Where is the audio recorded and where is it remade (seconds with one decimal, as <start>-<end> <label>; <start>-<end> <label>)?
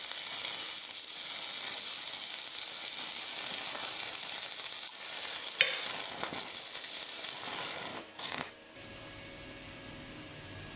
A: 0.0-7.9 recorded; 7.9-8.5 remade; 8.5-10.8 recorded